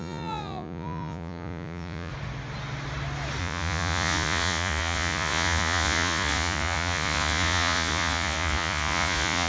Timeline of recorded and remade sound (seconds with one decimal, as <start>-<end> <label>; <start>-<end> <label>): 0.0-2.1 remade; 2.1-3.4 recorded; 3.4-9.5 remade